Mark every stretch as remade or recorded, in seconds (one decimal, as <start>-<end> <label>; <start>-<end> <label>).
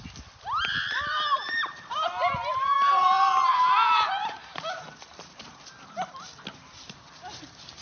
0.0-7.8 recorded